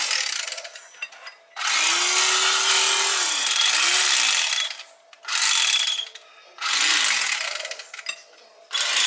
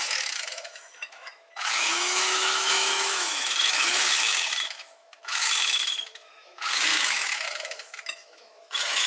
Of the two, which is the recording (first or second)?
first